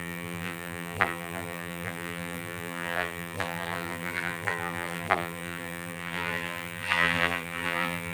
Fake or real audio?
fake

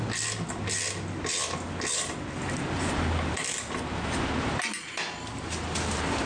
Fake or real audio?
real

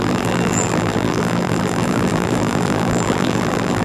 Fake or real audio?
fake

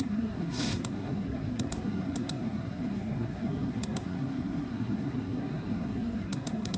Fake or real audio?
fake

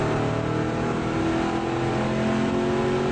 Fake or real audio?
real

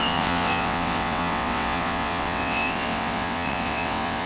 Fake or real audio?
fake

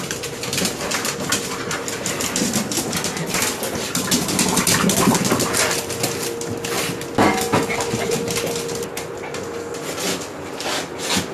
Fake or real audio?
real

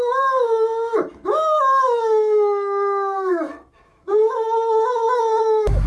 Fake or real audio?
fake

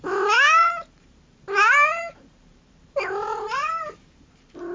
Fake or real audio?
fake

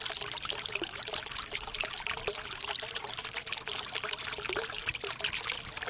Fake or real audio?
real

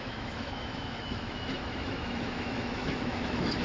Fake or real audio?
fake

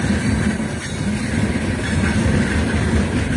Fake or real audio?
real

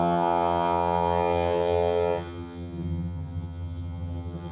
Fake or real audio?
fake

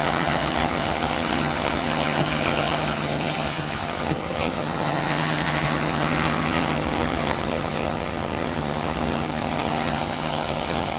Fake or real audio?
fake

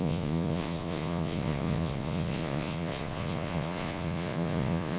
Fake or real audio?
fake